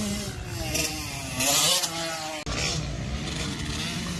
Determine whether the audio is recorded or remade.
recorded